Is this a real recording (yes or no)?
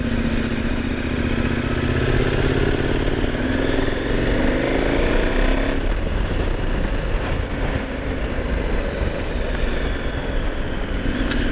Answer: yes